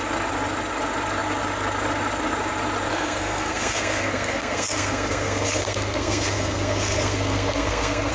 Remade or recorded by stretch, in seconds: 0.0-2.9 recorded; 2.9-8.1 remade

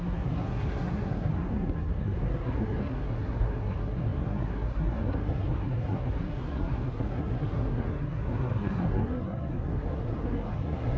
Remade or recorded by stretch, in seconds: 0.0-11.0 remade

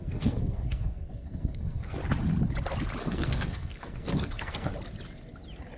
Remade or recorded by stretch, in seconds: 0.0-2.0 remade; 2.0-3.0 recorded; 3.0-4.7 remade; 4.7-5.8 recorded

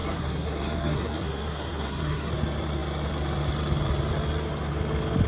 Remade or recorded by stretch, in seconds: 0.0-2.3 remade; 2.3-5.3 recorded

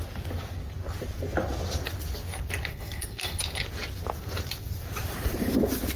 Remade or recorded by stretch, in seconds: 0.0-2.7 recorded; 2.7-3.4 remade; 3.4-6.0 recorded

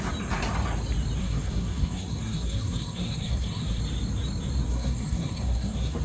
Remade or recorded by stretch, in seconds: 0.0-1.2 recorded; 1.2-3.8 remade; 3.8-4.7 recorded; 4.7-6.0 remade

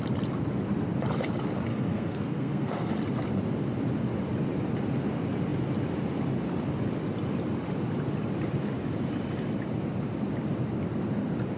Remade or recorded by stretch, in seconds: 0.0-1.7 recorded; 1.7-2.9 remade; 2.9-11.6 recorded